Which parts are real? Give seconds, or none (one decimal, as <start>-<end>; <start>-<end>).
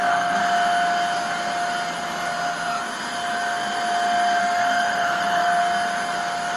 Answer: 0.4-4.4; 5.6-6.6